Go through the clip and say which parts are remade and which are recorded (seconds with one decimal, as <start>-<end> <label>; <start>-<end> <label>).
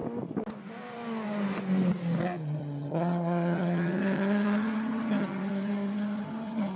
0.0-2.6 recorded; 2.6-6.8 remade